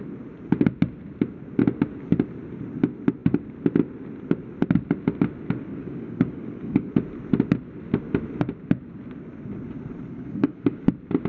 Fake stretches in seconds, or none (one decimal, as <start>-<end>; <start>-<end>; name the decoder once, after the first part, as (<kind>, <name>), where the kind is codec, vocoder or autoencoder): 5.7-6.9 (codec, DAC); 10.1-10.8